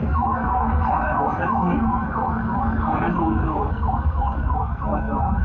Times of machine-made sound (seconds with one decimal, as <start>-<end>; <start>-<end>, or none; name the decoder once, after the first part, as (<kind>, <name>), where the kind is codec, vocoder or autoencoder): 0.0-5.4 (codec, SNAC)